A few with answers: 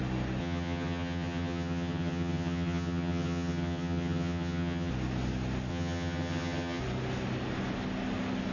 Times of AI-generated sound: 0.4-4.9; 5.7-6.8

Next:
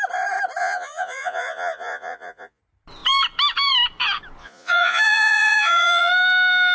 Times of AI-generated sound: 0.6-2.6; 4.4-6.1

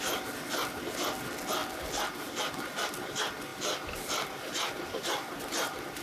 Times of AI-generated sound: none

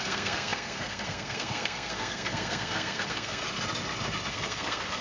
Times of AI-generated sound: 0.0-3.4; 4.3-5.0